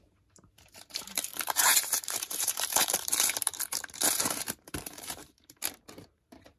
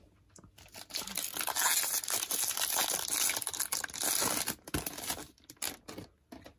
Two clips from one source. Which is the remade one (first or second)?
first